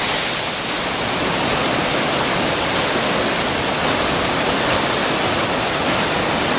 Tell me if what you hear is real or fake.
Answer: real